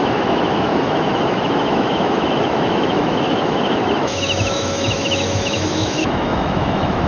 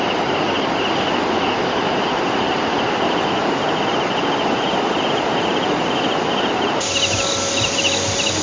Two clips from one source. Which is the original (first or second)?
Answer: second